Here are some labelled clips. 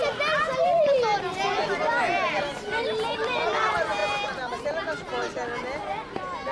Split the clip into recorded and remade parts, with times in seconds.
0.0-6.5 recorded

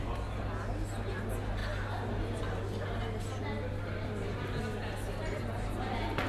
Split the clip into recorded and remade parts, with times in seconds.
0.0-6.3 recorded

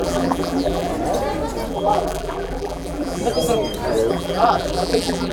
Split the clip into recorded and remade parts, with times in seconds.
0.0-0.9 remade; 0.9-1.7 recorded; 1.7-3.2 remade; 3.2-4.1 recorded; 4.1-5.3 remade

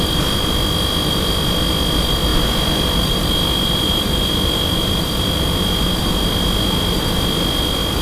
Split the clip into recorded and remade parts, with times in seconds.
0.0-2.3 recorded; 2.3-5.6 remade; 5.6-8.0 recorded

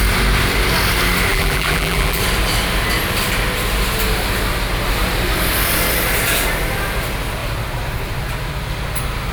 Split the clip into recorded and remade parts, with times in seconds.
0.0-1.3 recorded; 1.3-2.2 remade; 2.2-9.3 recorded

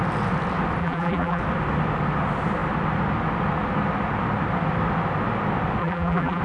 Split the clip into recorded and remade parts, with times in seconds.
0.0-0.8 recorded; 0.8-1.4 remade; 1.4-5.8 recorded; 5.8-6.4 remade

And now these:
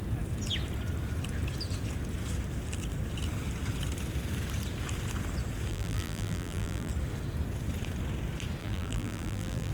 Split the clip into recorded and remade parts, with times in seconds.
0.0-5.7 recorded; 5.7-6.9 remade; 6.9-8.6 recorded; 8.6-9.7 remade

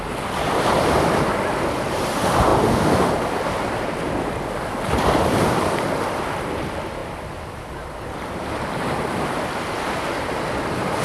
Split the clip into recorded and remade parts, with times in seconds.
0.0-2.5 remade; 2.5-3.1 recorded; 3.1-11.0 remade